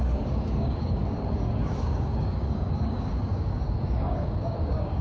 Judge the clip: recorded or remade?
remade